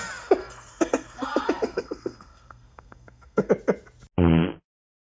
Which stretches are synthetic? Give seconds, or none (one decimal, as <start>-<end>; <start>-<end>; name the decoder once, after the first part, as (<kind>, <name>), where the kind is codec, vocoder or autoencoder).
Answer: 0.4-3.5 (codec, SNAC)